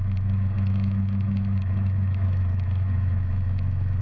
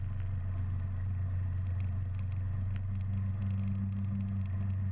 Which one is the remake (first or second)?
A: first